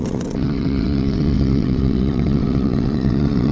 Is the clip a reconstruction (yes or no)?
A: yes